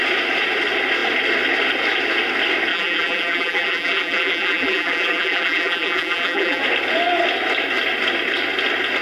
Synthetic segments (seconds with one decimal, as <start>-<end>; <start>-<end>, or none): 2.7-6.6